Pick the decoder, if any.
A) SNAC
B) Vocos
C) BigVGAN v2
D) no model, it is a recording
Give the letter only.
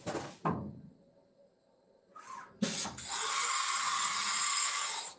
D